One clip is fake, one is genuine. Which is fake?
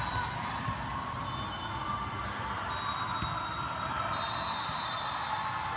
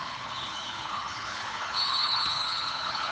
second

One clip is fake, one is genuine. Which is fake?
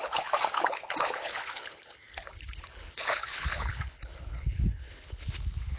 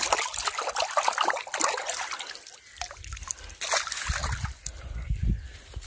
first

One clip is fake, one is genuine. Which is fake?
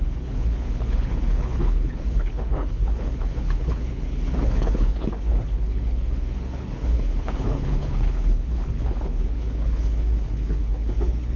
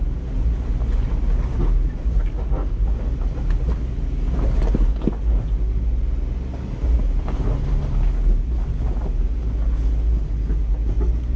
first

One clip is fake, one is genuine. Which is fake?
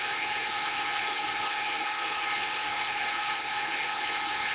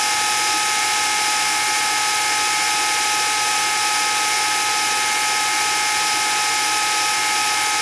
first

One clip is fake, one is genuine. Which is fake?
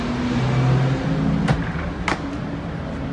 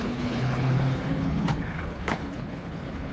second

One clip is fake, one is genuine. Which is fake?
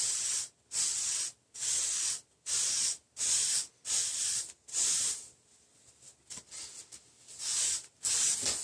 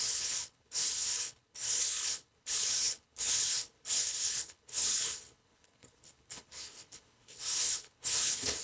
second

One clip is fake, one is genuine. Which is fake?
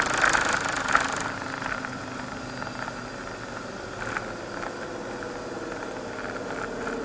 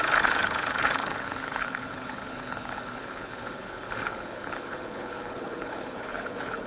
second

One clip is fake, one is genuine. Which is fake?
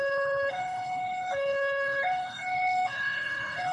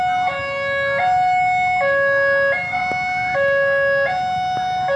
first